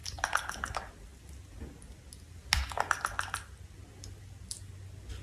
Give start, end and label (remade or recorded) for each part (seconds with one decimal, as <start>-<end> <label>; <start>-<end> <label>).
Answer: 0.0-5.2 recorded